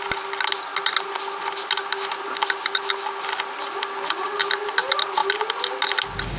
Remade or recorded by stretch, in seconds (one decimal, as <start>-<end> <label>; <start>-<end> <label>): 0.0-6.4 recorded